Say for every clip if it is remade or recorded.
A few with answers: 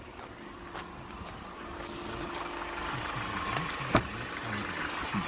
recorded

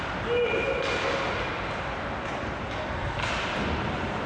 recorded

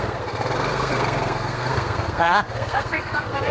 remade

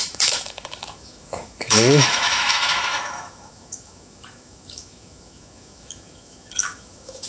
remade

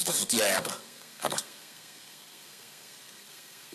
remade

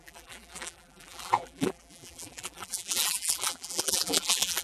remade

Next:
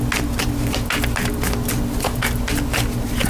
recorded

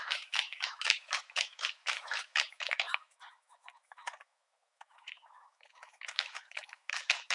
remade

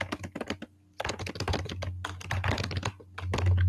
recorded